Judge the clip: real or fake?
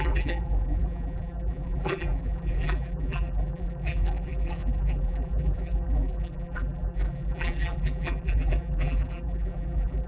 fake